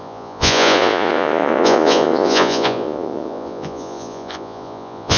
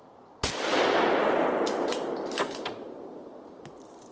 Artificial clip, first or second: first